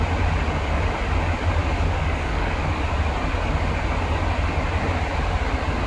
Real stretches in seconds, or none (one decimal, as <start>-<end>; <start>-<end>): 0.0-1.6; 2.8-5.9